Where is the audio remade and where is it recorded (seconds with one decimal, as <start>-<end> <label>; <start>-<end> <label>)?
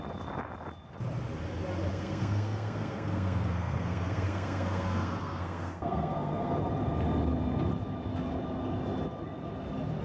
0.0-1.9 recorded; 1.9-6.6 remade; 6.6-10.0 recorded